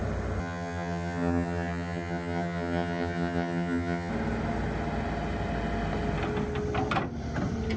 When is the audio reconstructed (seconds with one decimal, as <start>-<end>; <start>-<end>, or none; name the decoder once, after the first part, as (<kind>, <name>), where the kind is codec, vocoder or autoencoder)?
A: 0.4-4.1 (vocoder, HiFi-GAN)